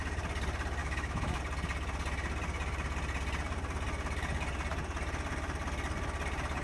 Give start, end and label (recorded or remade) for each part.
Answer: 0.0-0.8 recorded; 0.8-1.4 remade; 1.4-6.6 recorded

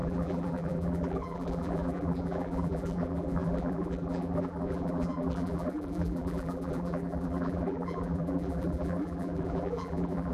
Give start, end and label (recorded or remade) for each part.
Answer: 0.0-10.3 remade

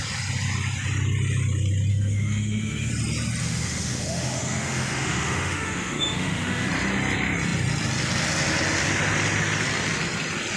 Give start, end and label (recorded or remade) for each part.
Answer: 0.0-1.9 recorded; 1.9-2.9 remade; 2.9-3.4 recorded; 3.4-6.7 remade; 6.7-10.6 recorded

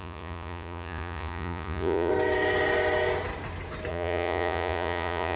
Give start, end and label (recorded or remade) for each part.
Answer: 0.0-2.1 remade; 2.1-3.9 recorded; 3.9-5.4 remade

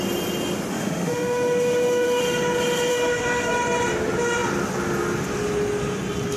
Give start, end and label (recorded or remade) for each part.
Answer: 0.0-0.7 recorded; 0.7-2.2 remade; 2.2-2.9 recorded; 2.9-3.5 remade; 3.5-6.4 recorded